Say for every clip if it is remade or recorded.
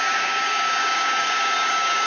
remade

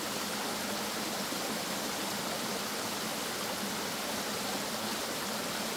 recorded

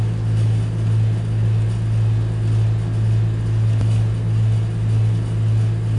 recorded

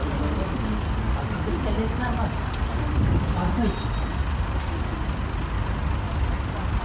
recorded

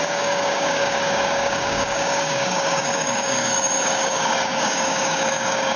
remade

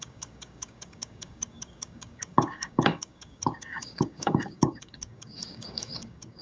remade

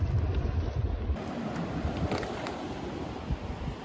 recorded